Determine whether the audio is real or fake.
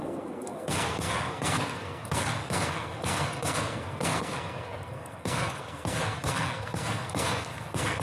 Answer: fake